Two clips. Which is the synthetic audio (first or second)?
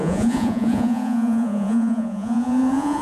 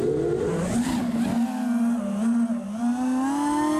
first